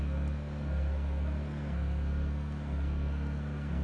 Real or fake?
fake